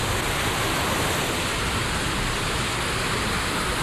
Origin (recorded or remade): recorded